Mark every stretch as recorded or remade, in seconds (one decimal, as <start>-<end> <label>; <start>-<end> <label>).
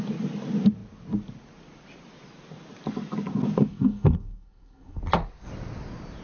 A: 0.0-3.7 recorded; 3.7-5.0 remade; 5.0-6.2 recorded